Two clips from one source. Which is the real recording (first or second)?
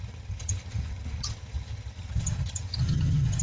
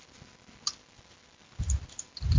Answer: second